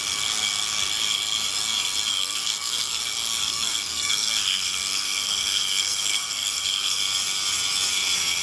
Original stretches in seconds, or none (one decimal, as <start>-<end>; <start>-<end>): 0.0-2.1; 3.0-3.4; 7.0-8.4